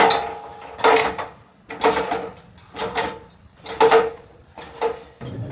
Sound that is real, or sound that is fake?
real